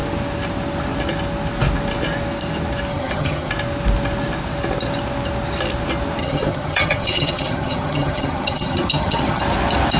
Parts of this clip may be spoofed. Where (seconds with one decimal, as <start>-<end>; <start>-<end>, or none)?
2.9-3.5; 6.2-9.4